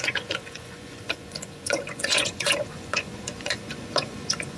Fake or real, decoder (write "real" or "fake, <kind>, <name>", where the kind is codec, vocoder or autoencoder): fake, vocoder, Vocos